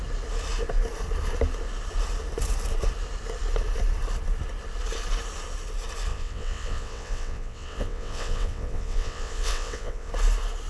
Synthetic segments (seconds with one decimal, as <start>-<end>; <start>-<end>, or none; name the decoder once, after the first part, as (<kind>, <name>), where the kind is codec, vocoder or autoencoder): 6.1-10.1 (vocoder, WaveNeXt)